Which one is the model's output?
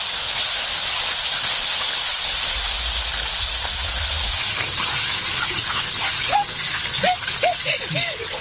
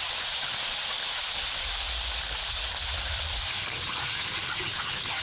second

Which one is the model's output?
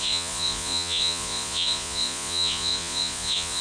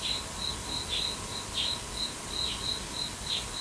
first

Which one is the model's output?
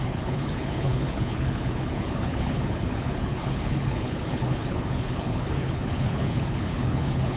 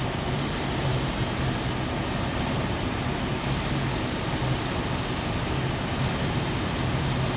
first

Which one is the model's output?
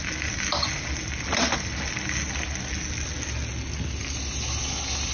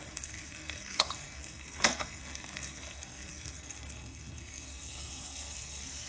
second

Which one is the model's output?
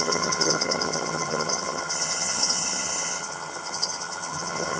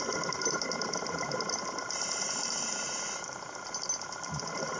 first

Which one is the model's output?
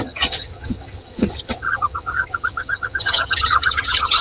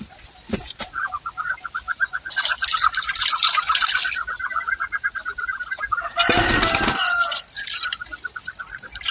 first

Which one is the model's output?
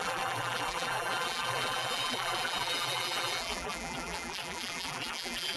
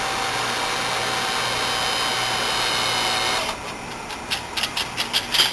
first